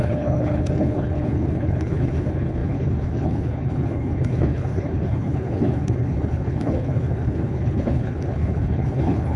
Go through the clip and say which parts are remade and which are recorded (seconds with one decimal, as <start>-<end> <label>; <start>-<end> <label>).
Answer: 0.0-9.4 remade